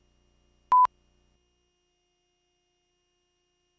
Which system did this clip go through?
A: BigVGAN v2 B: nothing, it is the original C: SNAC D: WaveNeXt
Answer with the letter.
B